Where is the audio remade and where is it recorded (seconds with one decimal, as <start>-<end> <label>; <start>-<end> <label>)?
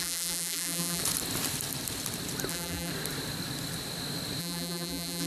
0.0-1.0 remade; 1.0-2.5 recorded; 2.5-2.9 remade; 2.9-4.4 recorded; 4.4-5.3 remade